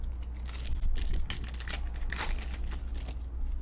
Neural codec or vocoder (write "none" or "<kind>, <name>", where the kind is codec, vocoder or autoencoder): none